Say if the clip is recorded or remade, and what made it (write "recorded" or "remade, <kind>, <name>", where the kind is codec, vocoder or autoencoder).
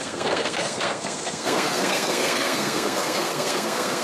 remade, codec, SNAC